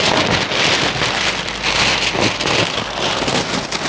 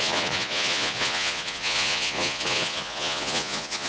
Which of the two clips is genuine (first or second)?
first